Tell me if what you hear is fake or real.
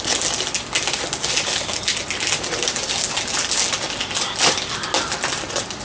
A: real